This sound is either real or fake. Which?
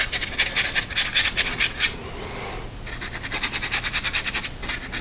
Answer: real